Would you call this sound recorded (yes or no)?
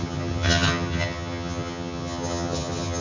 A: no